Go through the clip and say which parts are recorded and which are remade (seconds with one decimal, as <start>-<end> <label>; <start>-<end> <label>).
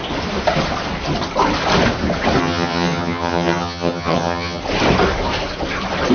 0.0-2.4 recorded; 2.4-4.6 remade; 4.6-6.1 recorded